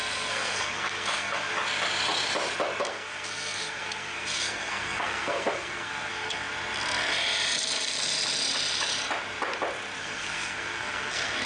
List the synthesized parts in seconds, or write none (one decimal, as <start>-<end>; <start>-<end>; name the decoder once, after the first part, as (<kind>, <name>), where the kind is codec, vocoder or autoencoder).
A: 0.0-1.5 (codec, SNAC); 2.8-6.5; 10.0-11.5